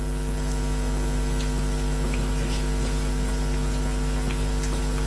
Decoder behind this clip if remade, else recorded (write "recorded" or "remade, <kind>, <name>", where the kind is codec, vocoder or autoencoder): recorded